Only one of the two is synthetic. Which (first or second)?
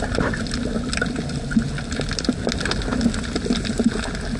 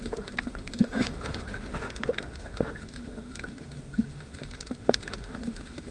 second